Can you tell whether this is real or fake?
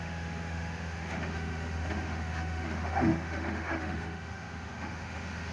fake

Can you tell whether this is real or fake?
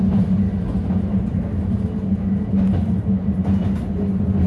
real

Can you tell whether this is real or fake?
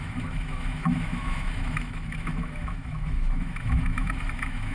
fake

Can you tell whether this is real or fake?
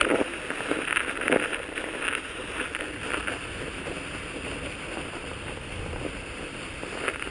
real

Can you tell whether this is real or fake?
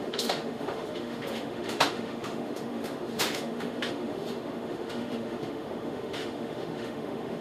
fake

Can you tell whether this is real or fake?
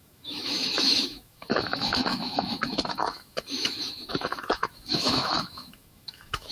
fake